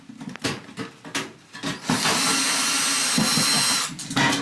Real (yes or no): yes